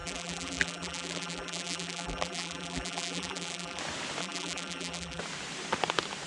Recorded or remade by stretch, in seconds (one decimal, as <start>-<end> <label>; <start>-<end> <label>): 0.0-3.8 remade; 3.8-4.2 recorded; 4.2-5.2 remade; 5.2-6.3 recorded